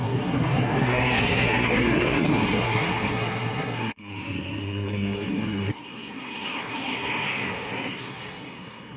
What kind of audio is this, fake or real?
fake